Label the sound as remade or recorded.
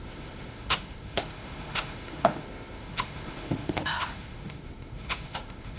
remade